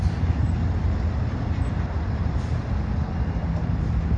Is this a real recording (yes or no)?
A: yes